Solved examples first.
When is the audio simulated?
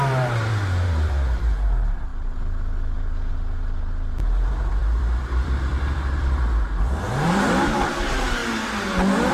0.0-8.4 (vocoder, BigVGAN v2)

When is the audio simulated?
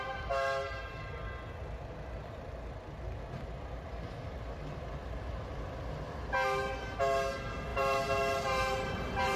7.7-9.4 (vocoder, BigVGAN v2)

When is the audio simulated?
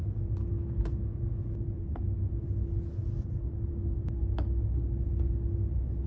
none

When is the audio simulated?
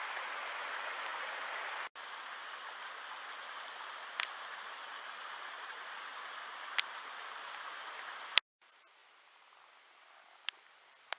none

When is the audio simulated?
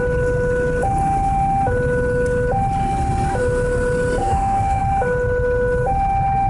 4.2-4.8 (codec, SNAC)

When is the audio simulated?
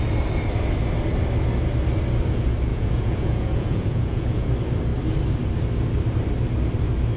2.7-4.5 (vocoder, Vocos)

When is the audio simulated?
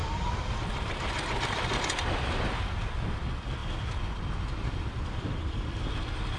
0.0-3.6 (vocoder, BigVGAN v2); 4.7-6.4